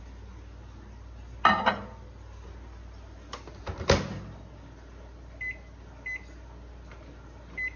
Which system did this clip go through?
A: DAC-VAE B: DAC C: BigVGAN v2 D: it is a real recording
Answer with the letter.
D